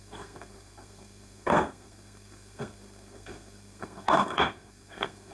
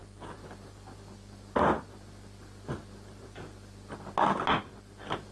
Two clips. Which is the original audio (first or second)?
second